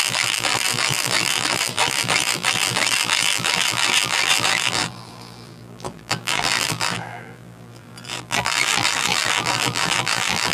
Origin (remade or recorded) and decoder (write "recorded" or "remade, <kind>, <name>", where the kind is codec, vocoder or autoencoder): remade, vocoder, BigVGAN v2